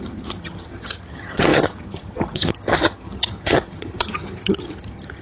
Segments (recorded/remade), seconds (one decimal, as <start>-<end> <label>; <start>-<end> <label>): 0.0-5.2 remade